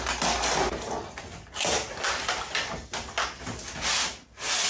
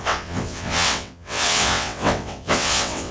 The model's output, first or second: second